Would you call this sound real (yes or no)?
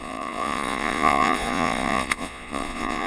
no